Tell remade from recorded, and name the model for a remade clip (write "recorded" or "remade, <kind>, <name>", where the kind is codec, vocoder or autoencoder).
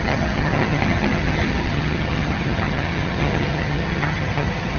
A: remade, vocoder, HiFi-GAN